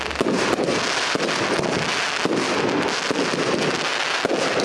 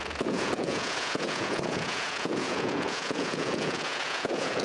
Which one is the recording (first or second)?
first